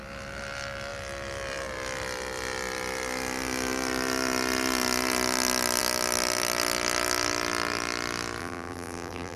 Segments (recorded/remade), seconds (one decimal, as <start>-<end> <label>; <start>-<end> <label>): 0.0-8.4 recorded; 8.4-9.4 remade

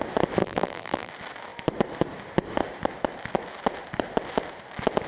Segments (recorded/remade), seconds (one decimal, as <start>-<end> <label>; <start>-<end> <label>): 0.0-0.4 recorded; 0.4-1.1 remade; 1.1-5.1 recorded

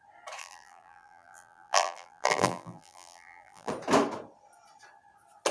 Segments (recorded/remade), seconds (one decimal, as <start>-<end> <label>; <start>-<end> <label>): 0.0-0.4 recorded; 0.4-3.7 remade; 3.7-5.5 recorded

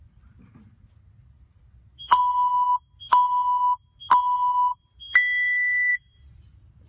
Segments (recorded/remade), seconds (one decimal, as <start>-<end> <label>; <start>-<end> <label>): 0.0-2.2 remade; 2.2-5.9 recorded; 5.9-6.9 remade

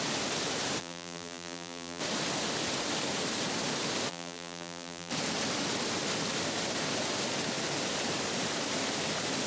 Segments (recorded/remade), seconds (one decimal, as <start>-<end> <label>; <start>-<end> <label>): 0.0-0.8 recorded; 0.8-2.0 remade; 2.0-4.1 recorded; 4.1-5.1 remade; 5.1-9.5 recorded